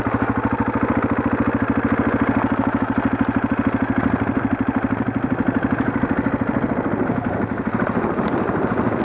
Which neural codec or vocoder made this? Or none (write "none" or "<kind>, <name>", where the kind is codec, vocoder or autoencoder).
none